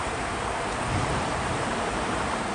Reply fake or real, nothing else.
fake